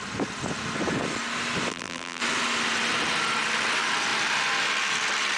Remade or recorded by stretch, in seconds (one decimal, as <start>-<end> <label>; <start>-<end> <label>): 0.0-1.7 recorded; 1.7-2.2 remade; 2.2-5.4 recorded